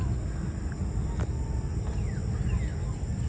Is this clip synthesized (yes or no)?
no